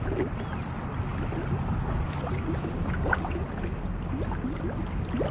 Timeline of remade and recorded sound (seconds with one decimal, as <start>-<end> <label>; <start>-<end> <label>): 0.0-5.3 recorded